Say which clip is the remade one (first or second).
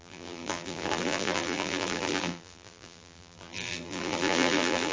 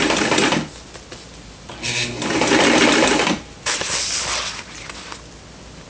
first